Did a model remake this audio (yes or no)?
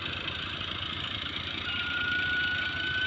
yes